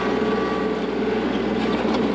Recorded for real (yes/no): yes